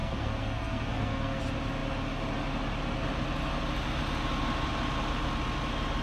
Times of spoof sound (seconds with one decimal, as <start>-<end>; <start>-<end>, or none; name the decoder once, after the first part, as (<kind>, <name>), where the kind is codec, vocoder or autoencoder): 0.0-1.4 (codec, SNAC)